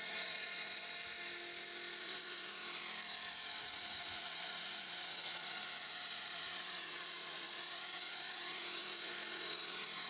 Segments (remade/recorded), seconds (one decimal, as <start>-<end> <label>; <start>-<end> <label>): 0.0-0.8 remade; 0.8-2.0 recorded; 2.0-2.6 remade; 2.6-3.6 recorded; 3.6-10.1 remade